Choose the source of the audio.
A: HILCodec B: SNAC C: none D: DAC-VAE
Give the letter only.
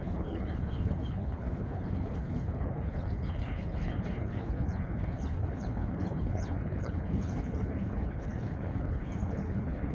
A